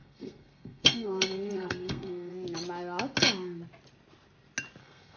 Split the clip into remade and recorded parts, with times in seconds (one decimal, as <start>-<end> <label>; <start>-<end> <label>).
0.0-2.3 remade; 2.3-4.8 recorded; 4.8-5.2 remade